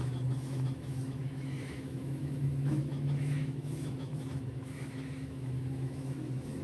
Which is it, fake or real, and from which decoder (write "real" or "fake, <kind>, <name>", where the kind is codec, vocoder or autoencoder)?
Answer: fake, autoencoder, DAC-VAE